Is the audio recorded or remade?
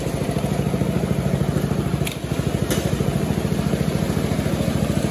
remade